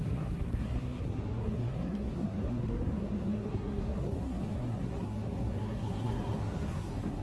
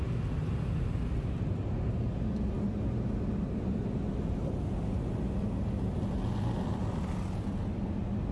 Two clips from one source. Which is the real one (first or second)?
second